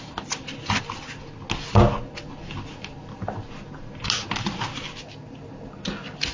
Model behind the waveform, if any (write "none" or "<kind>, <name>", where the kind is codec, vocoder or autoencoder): none